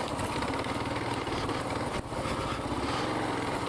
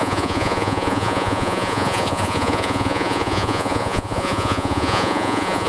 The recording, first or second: first